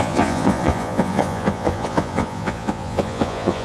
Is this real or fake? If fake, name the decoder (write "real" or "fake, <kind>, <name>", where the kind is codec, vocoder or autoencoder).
fake, vocoder, Vocos